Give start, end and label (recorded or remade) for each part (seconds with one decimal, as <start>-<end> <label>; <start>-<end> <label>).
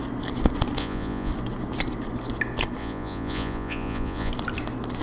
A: 0.0-0.8 recorded; 0.8-1.3 remade; 1.3-2.8 recorded; 2.8-4.3 remade; 4.3-5.0 recorded